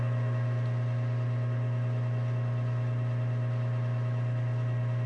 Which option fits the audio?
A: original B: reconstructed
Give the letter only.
A